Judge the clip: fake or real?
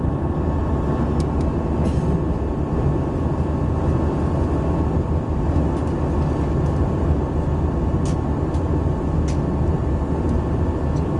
real